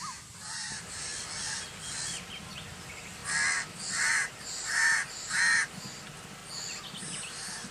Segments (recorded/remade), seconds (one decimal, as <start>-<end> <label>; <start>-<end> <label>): 0.0-1.1 remade; 1.1-2.8 recorded; 2.8-3.2 remade; 3.2-4.1 recorded; 4.1-6.4 remade; 6.4-7.0 recorded; 7.0-7.7 remade